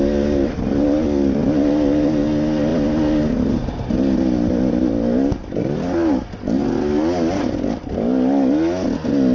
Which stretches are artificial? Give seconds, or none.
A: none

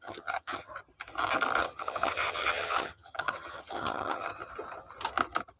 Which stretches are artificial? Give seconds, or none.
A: 0.0-0.7; 1.6-4.3

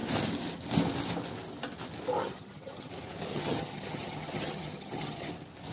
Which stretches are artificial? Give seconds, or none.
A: 2.2-2.9; 3.3-5.3

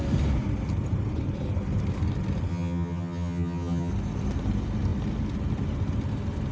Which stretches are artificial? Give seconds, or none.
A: 2.5-3.9

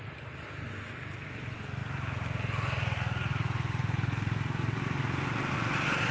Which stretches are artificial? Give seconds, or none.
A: none

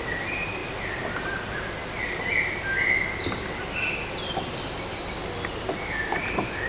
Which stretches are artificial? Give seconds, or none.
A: none

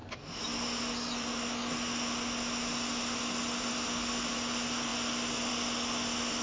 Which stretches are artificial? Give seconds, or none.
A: none